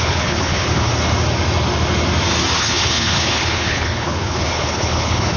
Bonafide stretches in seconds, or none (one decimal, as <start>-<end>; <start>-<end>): 0.9-2.6